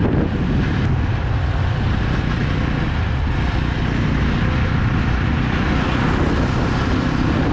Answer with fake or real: real